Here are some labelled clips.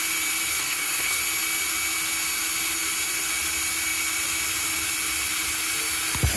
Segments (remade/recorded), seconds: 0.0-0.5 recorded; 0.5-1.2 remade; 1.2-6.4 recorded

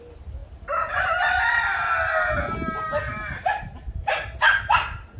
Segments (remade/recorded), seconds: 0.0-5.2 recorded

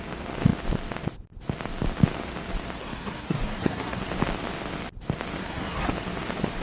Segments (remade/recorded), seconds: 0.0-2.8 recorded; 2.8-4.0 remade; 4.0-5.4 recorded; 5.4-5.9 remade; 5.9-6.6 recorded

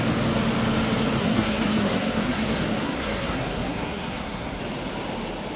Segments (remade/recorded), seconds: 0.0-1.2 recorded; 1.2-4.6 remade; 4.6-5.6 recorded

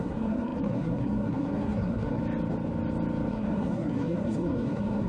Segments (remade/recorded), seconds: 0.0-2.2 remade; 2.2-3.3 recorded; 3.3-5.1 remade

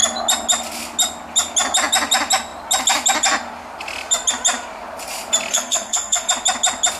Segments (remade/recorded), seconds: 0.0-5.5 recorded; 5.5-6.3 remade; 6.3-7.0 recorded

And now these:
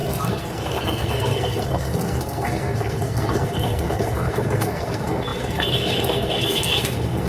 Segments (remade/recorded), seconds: 0.0-7.3 remade

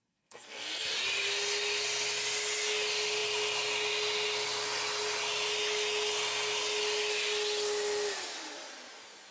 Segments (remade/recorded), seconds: 0.0-0.9 remade; 0.9-9.3 recorded